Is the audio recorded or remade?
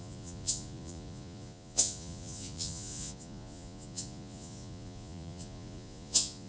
remade